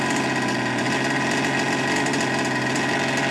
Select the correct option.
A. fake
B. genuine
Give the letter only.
B